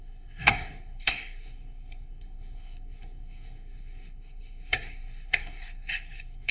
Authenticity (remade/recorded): remade